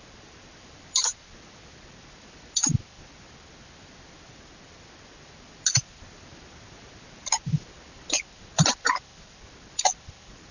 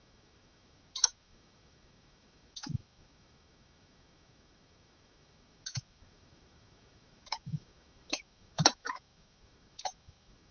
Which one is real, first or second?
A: first